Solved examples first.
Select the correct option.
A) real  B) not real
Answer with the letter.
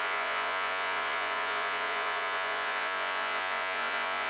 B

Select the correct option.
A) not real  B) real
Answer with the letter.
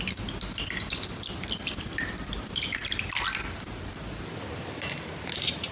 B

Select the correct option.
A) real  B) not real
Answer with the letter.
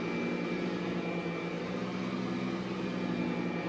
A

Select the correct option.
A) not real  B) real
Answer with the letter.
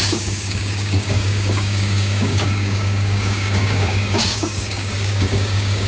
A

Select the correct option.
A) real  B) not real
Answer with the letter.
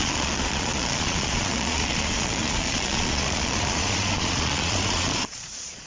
B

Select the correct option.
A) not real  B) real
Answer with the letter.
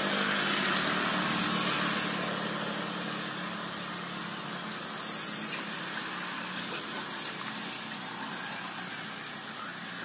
B